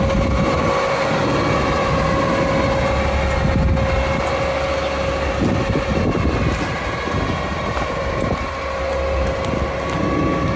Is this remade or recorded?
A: recorded